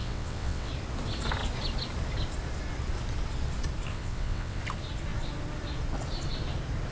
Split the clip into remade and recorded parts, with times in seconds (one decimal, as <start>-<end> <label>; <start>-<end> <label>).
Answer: 0.0-0.7 remade; 0.7-3.9 recorded; 3.9-4.6 remade; 4.6-6.9 recorded